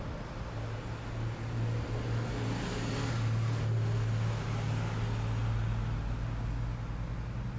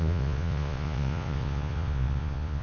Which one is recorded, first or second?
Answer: first